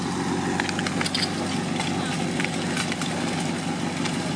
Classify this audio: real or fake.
real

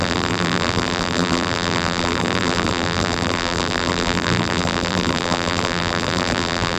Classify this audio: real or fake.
fake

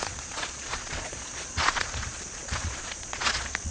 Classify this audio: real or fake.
fake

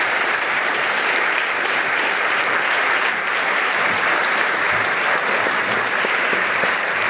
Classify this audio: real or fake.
fake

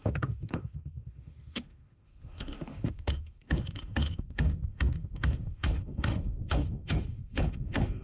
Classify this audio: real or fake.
fake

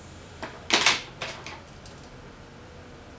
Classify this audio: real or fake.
real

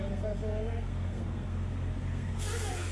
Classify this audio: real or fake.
fake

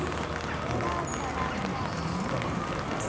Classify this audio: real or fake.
real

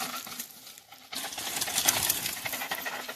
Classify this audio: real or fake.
real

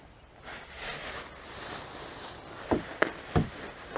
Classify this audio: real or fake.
real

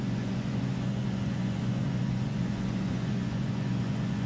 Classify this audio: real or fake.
fake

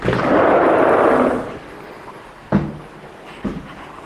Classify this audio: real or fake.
real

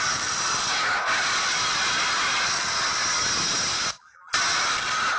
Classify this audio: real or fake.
real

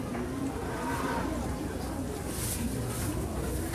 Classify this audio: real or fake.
real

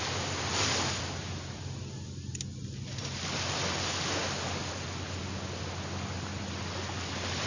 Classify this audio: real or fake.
real